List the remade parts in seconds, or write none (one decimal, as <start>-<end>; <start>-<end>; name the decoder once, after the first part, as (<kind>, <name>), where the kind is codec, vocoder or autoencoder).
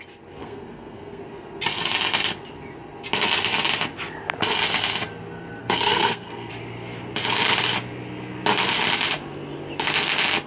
0.4-1.2 (codec, SNAC); 5.6-6.5